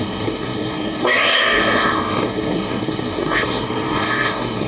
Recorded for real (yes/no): no